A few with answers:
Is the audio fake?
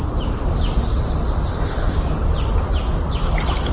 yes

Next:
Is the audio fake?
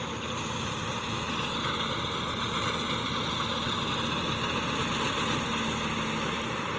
no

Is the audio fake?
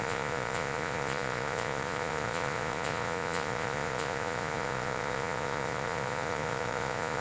yes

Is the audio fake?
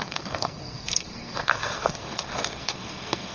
yes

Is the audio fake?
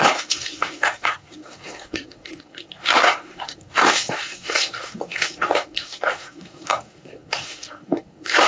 yes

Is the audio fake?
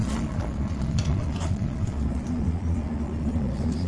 yes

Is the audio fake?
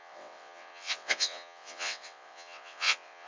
yes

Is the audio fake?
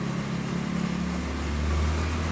no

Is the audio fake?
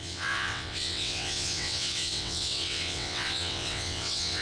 yes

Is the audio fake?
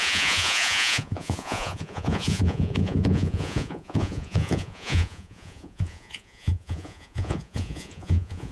yes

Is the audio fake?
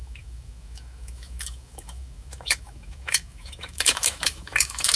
yes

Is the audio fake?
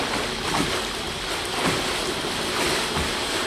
no